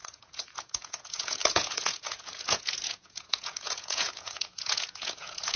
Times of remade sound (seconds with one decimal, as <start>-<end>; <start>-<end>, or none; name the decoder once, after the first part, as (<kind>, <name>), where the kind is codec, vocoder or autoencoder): 0.0-5.6 (vocoder, Vocos)

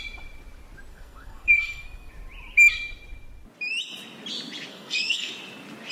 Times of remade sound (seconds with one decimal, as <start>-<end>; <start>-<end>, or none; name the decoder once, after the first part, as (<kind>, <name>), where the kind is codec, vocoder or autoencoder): 0.9-2.1 (codec, SNAC); 4.7-5.3

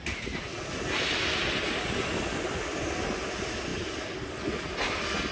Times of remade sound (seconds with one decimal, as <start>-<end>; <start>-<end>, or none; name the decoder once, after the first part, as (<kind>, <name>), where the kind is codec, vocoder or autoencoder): none

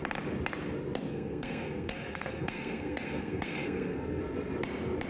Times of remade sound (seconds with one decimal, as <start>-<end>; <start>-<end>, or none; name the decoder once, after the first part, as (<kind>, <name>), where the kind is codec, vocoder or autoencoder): 1.1-4.2 (codec, SNAC)

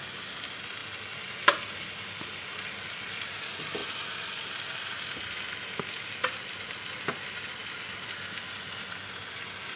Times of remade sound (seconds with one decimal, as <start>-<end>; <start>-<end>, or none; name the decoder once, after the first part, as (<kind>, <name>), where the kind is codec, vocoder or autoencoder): none

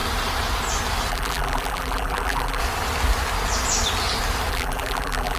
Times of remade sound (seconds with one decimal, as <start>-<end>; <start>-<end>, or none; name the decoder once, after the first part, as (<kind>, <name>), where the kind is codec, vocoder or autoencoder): 1.1-2.6 (vocoder, BigVGAN v2); 4.5-5.4

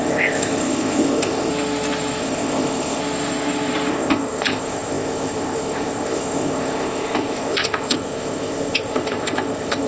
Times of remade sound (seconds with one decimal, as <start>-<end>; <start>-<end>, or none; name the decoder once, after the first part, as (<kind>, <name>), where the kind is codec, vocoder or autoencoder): 0.0-1.5 (codec, ZipCodec); 2.2-3.0; 3.9-9.9

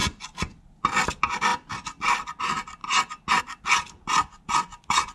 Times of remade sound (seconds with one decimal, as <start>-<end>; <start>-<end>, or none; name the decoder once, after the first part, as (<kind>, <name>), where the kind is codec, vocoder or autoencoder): none